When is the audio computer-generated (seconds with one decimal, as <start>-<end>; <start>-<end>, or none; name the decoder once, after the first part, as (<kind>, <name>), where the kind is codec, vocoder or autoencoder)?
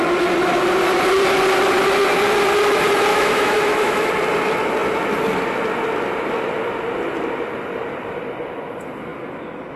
3.1-4.1 (autoencoder, DAC-VAE)